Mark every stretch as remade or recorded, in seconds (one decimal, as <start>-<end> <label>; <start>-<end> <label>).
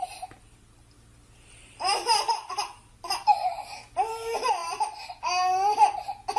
0.0-6.4 recorded